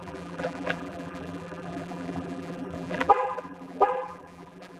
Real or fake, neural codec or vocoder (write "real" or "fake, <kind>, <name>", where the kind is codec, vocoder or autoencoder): fake, vocoder, BigVGAN v2